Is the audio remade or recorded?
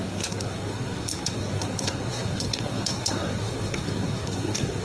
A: remade